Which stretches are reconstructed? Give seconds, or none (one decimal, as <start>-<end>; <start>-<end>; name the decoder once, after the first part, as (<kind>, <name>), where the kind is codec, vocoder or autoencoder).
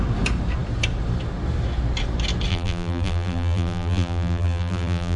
2.5-5.2 (vocoder, BigVGAN v2)